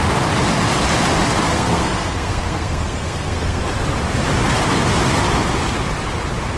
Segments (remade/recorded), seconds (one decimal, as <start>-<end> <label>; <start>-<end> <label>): 0.0-1.5 recorded; 1.5-3.6 remade; 3.6-6.6 recorded